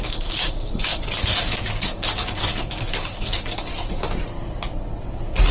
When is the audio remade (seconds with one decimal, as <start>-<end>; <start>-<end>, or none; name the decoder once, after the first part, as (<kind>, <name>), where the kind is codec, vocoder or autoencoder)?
0.0-3.7 (codec, DAC)